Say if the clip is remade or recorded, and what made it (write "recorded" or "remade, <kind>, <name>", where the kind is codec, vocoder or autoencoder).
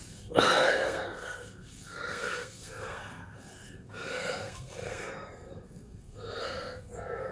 remade, codec, SNAC